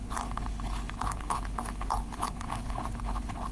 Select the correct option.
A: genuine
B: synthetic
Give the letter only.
B